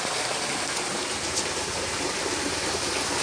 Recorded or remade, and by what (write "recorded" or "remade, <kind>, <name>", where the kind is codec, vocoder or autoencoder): recorded